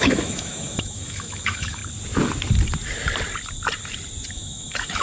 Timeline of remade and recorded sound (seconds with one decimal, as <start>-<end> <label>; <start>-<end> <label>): 0.0-1.8 remade; 1.8-4.3 recorded; 4.3-5.0 remade